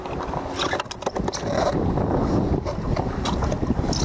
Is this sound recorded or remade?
recorded